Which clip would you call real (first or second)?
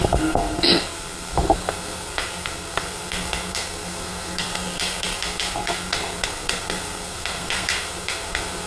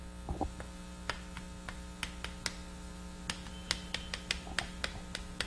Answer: second